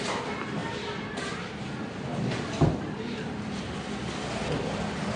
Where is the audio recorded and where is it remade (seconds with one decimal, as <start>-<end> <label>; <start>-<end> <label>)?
0.0-0.6 recorded; 0.6-3.7 remade; 3.7-5.2 recorded